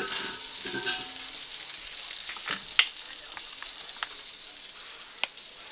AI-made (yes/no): no